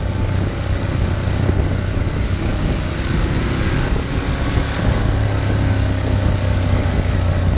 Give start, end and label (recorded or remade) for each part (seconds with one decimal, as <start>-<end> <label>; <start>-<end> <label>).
0.0-7.6 remade